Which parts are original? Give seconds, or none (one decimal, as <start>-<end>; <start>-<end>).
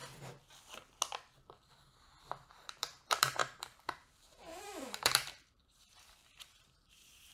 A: 0.0-2.5